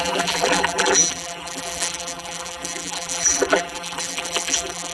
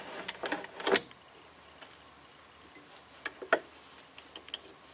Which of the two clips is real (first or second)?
second